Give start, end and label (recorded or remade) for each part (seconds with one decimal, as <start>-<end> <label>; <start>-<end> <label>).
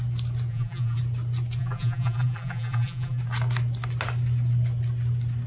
0.0-0.5 recorded; 0.5-1.0 remade; 1.0-1.6 recorded; 1.6-3.2 remade; 3.2-5.5 recorded